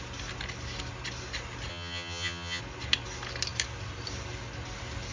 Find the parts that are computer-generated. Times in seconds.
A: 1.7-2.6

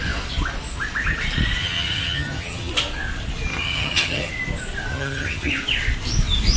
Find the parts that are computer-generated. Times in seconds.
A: 1.6-2.7; 3.5-4.3; 4.9-5.5

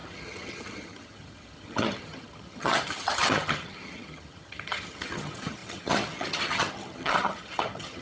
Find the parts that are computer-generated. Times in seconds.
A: 0.0-8.0

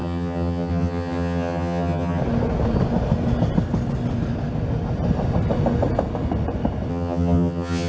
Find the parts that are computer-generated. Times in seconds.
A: 0.0-2.2; 6.9-7.9